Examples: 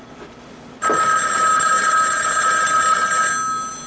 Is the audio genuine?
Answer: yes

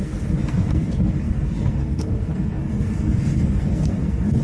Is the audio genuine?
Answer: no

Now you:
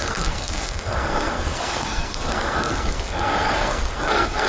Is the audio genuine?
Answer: no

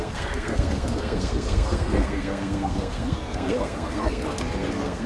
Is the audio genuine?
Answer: no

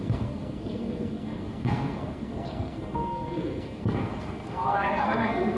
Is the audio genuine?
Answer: no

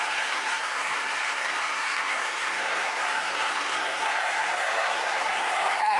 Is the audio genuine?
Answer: no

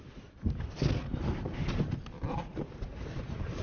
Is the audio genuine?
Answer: yes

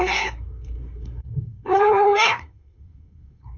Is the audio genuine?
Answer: no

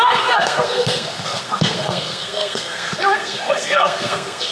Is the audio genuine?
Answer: no